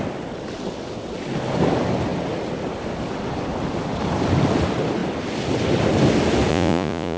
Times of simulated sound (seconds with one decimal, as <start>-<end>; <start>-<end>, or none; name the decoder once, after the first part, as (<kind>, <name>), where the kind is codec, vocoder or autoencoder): 6.5-7.2 (vocoder, Vocos)